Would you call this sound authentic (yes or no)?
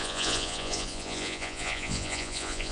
no